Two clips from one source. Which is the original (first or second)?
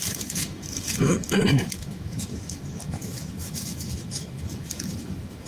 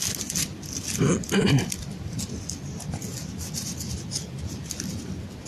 second